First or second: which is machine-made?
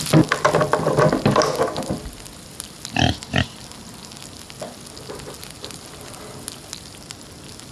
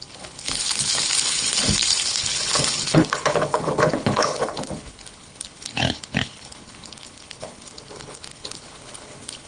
second